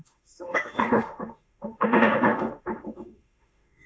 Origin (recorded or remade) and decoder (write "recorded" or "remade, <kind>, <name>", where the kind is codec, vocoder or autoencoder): remade, autoencoder, DAC-VAE